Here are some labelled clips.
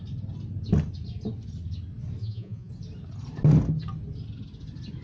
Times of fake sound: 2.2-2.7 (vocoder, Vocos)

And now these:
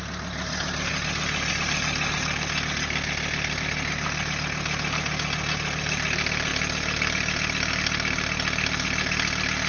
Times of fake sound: none

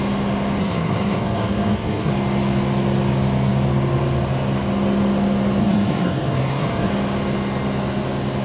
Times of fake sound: 0.6-2.1 (codec, SNAC); 5.6-6.9

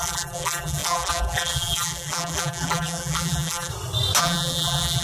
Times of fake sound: 0.0-3.7 (vocoder, BigVGAN v2); 4.2-5.0

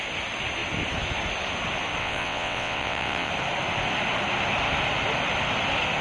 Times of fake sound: 2.0-3.3 (vocoder, WaveNeXt)

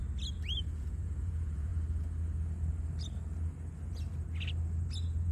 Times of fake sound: 0.6-1.7 (vocoder, Vocos)

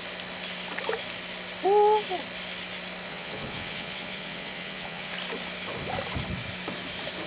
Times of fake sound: 3.1-5.1 (vocoder, WaveNeXt)

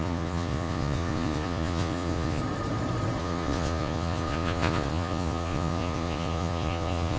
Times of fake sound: 0.0-2.4 (vocoder, Vocos); 3.2-7.2